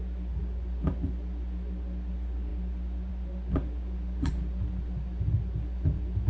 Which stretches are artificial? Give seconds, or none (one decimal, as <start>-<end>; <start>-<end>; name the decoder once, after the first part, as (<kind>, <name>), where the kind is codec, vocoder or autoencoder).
none